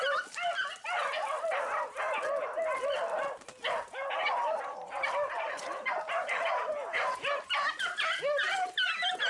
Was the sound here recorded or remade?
recorded